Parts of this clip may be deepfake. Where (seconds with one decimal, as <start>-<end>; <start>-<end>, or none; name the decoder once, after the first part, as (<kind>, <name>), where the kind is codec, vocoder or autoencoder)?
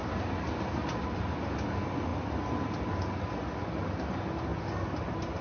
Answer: none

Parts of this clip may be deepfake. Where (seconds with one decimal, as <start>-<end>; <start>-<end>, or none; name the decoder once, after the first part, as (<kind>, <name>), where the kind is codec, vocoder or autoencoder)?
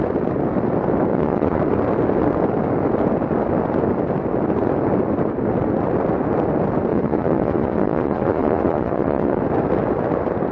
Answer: 1.1-1.6 (vocoder, Vocos); 6.9-9.4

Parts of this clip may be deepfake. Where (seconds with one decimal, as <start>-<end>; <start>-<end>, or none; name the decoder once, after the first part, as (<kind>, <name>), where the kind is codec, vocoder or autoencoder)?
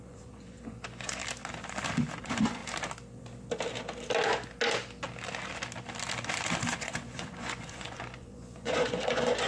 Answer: 0.0-1.2 (vocoder, Vocos); 2.2-2.6; 6.8-9.5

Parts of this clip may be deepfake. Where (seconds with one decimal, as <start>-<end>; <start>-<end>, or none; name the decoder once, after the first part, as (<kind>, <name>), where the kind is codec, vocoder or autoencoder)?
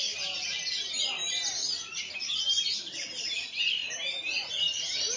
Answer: 1.6-2.1 (vocoder, Vocos)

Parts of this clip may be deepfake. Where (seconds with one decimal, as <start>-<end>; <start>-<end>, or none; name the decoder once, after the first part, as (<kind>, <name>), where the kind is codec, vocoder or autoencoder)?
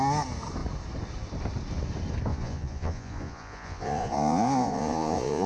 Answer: 2.3-5.5 (vocoder, Vocos)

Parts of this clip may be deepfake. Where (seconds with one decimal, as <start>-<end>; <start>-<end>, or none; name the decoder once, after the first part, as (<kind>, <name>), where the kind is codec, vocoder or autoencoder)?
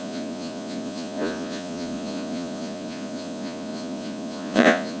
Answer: 0.0-5.0 (vocoder, Vocos)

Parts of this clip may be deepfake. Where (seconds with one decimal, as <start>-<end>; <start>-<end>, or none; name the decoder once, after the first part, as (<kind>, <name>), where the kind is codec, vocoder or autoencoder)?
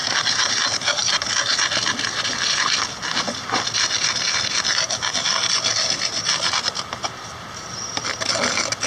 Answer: none